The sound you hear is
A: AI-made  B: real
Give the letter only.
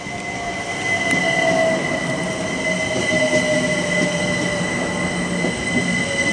B